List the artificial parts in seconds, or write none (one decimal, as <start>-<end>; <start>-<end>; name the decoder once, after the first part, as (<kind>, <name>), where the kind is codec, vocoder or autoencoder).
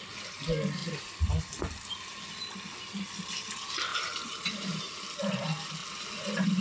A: 3.9-5.0 (vocoder, BigVGAN v2)